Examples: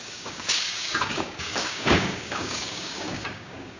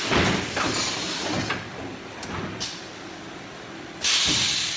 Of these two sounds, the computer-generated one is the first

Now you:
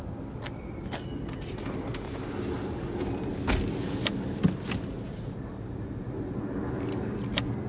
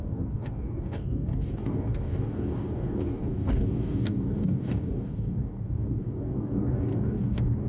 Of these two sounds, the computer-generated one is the second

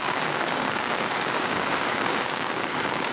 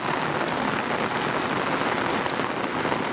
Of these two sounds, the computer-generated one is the first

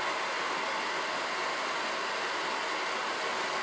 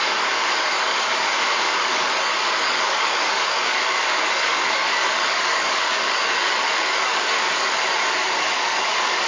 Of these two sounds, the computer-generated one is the second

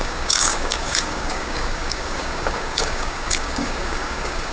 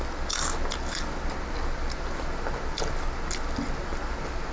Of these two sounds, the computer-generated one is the first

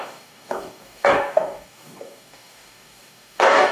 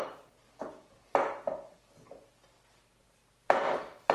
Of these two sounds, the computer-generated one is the first